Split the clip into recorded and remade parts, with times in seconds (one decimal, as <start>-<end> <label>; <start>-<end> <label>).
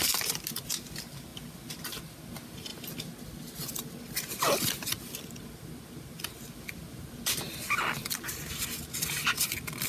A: 0.0-9.9 recorded